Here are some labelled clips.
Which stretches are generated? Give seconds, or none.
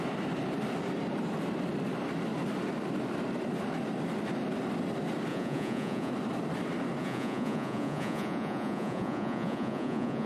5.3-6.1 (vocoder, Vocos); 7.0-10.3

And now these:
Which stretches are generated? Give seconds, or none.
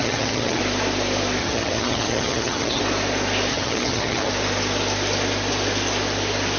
0.0-0.6 (vocoder, HiFi-GAN); 1.4-2.8; 3.5-4.3